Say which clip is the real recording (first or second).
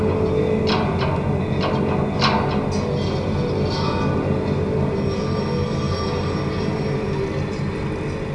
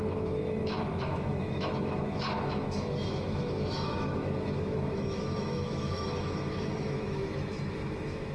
first